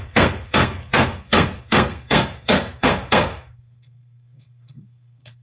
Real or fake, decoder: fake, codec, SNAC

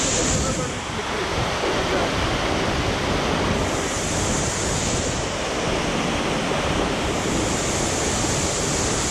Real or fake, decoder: real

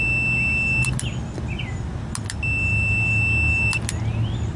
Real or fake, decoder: real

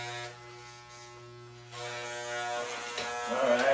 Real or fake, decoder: real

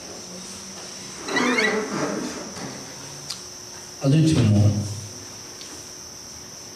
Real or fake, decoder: real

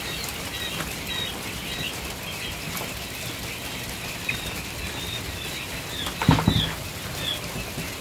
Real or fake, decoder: real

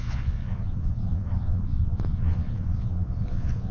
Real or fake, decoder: fake, vocoder, Vocos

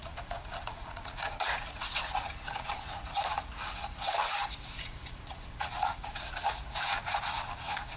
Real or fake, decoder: fake, vocoder, Vocos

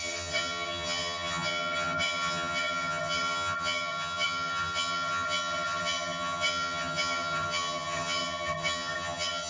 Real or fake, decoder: fake, vocoder, HiFi-GAN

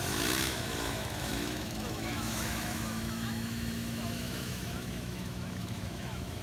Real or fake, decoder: fake, autoencoder, DAC-VAE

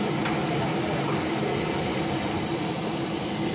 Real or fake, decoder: real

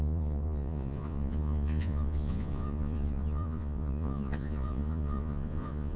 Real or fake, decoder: fake, vocoder, Vocos